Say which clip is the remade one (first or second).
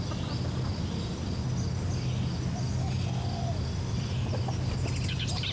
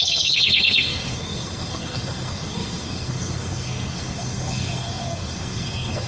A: second